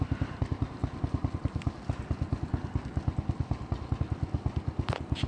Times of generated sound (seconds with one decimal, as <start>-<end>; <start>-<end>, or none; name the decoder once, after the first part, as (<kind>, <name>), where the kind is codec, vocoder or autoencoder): none